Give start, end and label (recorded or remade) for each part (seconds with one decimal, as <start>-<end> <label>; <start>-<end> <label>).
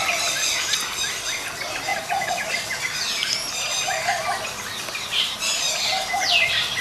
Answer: 0.0-6.8 recorded